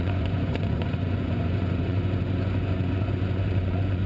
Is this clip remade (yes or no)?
yes